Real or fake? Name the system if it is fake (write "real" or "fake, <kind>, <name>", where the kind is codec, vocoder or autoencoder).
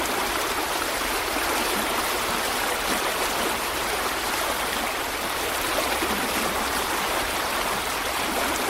real